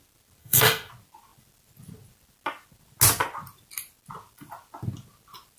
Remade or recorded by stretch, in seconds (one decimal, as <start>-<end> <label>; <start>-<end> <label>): 0.0-0.4 recorded; 0.4-0.9 remade; 0.9-5.6 recorded